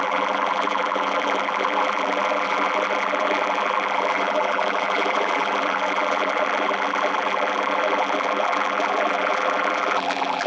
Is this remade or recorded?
remade